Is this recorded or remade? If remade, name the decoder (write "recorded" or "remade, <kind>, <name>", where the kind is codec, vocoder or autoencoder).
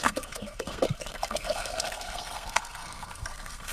remade, codec, SNAC